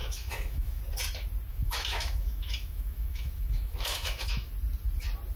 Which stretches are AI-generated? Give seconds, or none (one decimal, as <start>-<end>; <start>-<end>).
0.0-0.8; 1.5-4.5